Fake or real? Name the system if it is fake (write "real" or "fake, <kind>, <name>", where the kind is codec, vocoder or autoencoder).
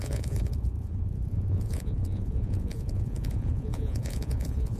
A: fake, vocoder, Vocos